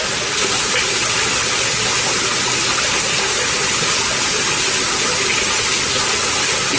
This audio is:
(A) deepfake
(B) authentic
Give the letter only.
B